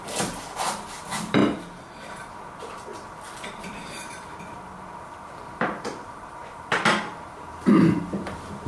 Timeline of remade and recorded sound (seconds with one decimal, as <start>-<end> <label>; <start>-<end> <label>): 0.0-1.4 remade; 1.4-2.1 recorded; 2.1-8.7 remade